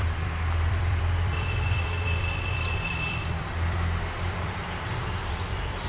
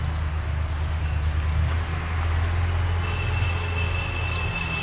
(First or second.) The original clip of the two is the second